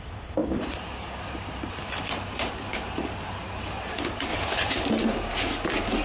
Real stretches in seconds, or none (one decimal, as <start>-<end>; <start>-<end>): 0.0-0.4; 1.7-2.7; 3.3-4.3; 4.9-6.0